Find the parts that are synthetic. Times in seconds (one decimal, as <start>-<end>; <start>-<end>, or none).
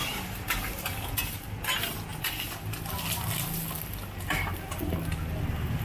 0.0-0.8